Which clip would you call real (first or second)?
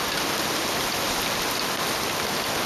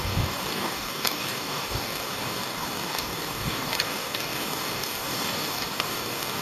first